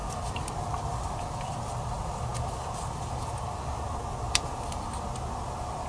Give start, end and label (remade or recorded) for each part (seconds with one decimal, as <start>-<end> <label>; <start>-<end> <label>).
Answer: 0.0-5.9 recorded